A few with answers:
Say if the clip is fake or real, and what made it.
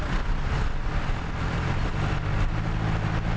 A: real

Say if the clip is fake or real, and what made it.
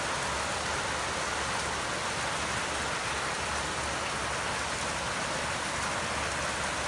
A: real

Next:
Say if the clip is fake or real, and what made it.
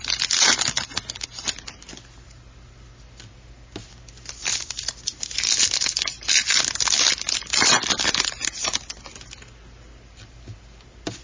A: real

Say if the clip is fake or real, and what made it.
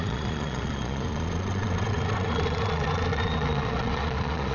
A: fake, vocoder, Vocos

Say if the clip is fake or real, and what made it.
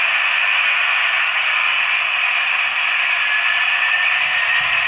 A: real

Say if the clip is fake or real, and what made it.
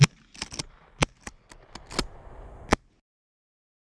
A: real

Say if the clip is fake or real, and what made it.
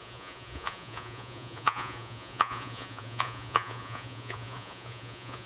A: fake, vocoder, Vocos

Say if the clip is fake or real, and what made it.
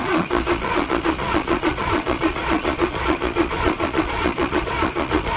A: fake, vocoder, Vocos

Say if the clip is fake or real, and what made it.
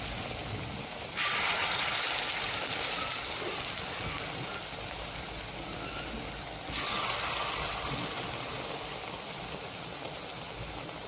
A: real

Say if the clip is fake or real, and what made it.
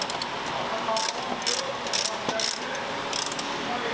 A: real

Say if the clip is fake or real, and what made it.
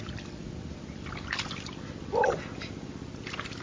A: real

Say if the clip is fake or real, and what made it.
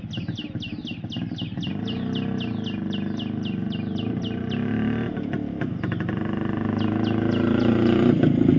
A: real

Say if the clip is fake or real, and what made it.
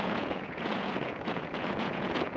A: fake, vocoder, Vocos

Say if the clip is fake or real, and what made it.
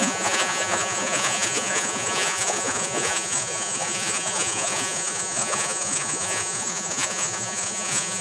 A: fake, vocoder, Vocos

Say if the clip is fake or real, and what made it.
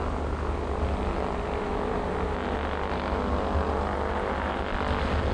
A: real